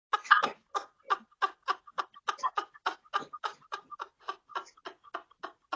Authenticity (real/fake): real